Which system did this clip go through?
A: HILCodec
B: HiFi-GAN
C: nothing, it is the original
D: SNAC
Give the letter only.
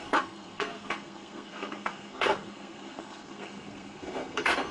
D